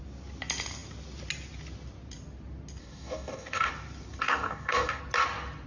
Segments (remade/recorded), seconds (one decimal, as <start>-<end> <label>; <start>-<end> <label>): 0.0-2.8 recorded; 2.8-3.7 remade; 3.7-4.2 recorded; 4.2-5.0 remade; 5.0-5.7 recorded